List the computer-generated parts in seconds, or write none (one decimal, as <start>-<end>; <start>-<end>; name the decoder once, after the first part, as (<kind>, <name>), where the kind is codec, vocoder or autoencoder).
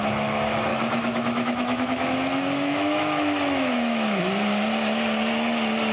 0.7-4.2 (autoencoder, DAC-VAE)